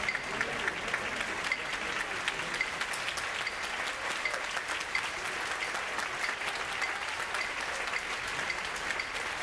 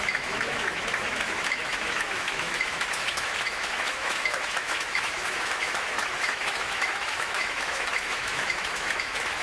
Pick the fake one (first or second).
second